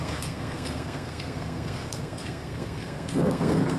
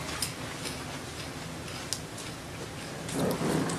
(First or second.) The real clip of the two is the second